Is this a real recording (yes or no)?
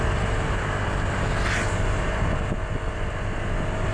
yes